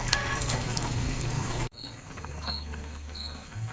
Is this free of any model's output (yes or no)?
no